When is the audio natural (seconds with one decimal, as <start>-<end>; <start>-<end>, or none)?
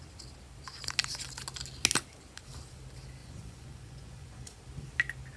0.0-3.2; 4.6-5.4